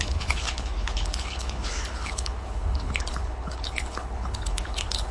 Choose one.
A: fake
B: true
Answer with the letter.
A